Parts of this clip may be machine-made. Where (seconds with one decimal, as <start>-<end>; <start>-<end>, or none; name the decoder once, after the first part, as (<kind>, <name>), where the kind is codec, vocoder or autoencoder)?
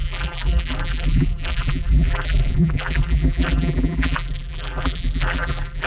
0.0-5.9 (vocoder, BigVGAN v2)